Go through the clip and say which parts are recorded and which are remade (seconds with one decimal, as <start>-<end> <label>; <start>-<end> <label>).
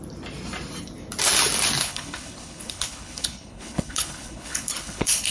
0.0-1.8 recorded; 1.8-5.3 remade